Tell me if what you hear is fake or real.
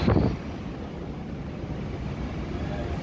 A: real